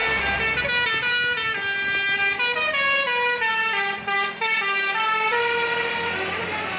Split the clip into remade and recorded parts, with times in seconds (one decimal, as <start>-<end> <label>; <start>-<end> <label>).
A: 0.0-6.8 recorded